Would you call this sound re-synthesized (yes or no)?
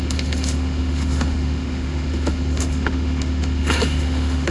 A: yes